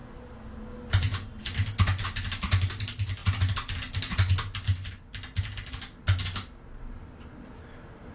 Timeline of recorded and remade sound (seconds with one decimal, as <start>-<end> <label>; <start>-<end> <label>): 0.0-8.1 recorded